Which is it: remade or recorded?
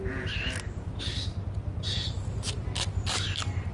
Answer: recorded